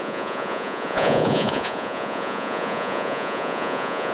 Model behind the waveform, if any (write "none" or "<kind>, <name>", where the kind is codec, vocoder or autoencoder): vocoder, Vocos